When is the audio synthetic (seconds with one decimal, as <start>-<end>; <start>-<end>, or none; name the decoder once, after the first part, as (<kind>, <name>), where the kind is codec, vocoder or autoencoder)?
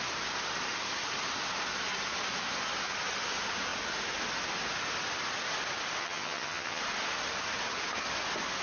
6.0-6.8 (vocoder, HiFi-GAN)